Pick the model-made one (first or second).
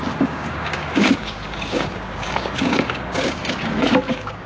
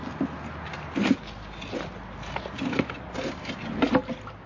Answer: first